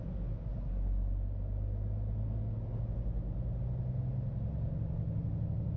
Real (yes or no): yes